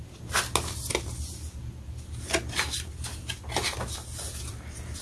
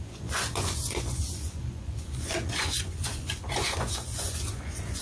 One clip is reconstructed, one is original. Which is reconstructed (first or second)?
second